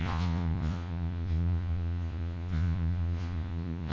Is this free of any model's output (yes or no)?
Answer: no